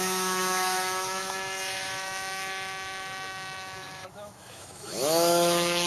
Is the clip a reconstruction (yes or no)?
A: yes